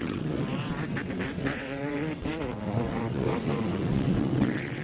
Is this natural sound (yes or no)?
no